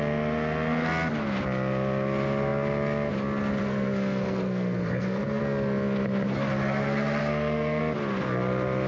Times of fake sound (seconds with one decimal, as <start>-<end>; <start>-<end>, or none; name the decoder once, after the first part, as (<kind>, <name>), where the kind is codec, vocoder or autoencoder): 3.6-5.4 (codec, SNAC); 7.2-7.8